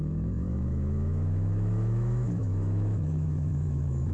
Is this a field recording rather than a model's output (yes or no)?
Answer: no